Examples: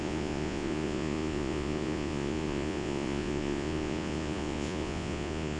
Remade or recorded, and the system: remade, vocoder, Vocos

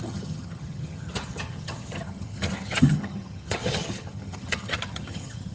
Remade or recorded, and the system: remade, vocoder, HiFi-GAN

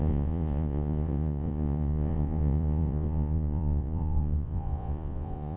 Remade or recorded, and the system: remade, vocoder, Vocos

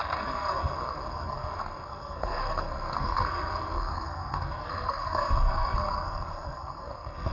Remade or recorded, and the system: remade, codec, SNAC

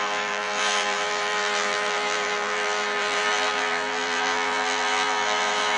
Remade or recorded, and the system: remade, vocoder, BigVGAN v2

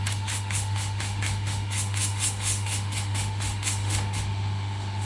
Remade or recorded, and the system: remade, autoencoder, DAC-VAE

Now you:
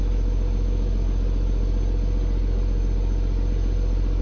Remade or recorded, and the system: recorded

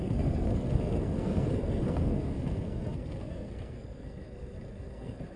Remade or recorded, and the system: remade, codec, SNAC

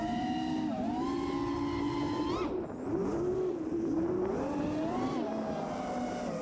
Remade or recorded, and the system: recorded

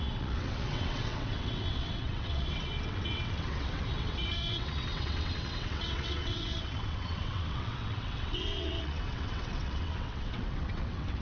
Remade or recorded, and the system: remade, vocoder, WaveNeXt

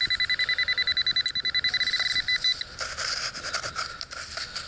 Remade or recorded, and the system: recorded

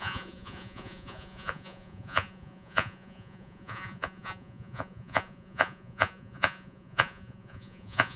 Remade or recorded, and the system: remade, vocoder, Vocos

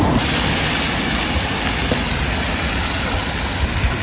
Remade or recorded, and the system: recorded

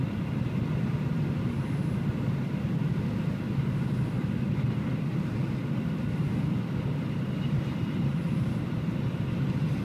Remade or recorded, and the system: recorded